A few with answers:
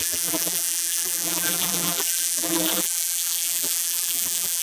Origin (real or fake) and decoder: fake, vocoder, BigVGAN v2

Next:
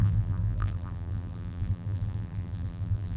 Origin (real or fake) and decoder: fake, vocoder, BigVGAN v2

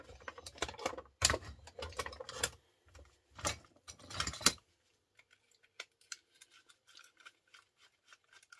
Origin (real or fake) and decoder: real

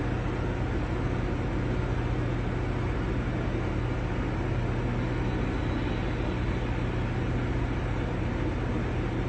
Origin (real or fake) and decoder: real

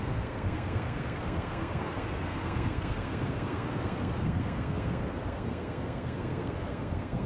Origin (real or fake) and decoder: fake, codec, SNAC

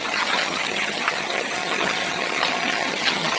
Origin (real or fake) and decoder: fake, vocoder, HiFi-GAN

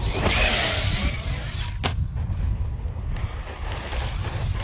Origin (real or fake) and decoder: real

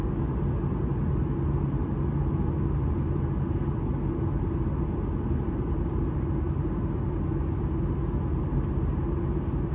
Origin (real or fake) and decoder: real